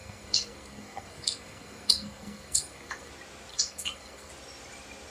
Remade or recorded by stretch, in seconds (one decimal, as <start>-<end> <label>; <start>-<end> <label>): 0.0-3.1 remade; 3.1-3.5 recorded; 3.5-4.3 remade; 4.3-5.1 recorded